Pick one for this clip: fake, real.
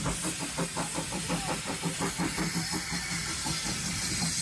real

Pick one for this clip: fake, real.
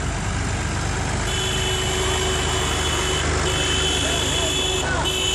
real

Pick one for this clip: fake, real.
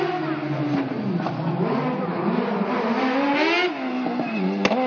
real